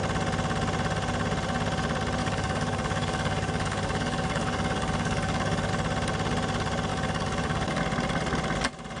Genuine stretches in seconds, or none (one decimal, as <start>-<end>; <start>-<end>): 0.0-2.2; 5.7-6.9; 7.8-9.0